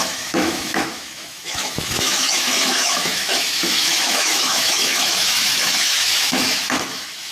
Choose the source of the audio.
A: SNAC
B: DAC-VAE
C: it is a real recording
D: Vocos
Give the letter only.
B